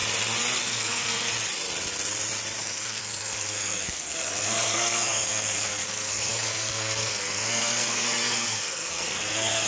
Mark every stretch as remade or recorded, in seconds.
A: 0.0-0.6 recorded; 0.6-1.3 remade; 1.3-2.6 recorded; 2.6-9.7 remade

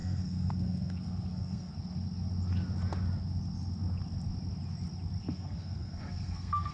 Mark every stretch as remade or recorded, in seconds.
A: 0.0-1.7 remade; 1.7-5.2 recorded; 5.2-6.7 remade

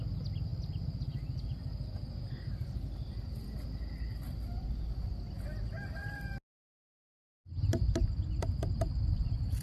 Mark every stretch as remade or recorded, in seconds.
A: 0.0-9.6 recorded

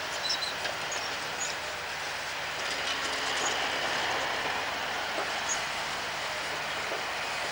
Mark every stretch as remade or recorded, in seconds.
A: 0.0-7.5 recorded